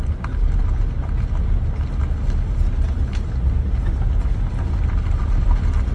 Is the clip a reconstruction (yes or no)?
no